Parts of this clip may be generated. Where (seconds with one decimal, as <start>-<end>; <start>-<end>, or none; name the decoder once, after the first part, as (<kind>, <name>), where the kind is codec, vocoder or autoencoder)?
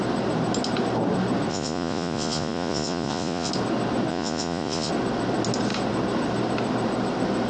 1.5-3.5 (vocoder, Vocos); 4.1-4.9